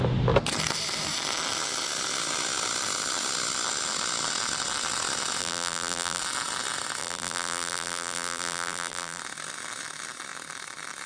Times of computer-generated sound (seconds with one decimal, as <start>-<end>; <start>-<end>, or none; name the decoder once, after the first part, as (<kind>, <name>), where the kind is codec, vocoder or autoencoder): 5.4-6.2 (vocoder, BigVGAN v2); 7.0-9.2